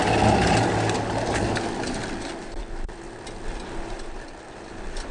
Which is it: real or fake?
real